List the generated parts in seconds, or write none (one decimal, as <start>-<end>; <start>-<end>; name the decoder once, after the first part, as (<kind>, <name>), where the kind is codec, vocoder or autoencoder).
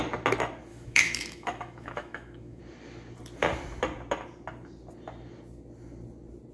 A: 0.7-2.6 (autoencoder, DAC-VAE)